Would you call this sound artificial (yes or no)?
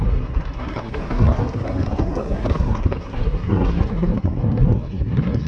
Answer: yes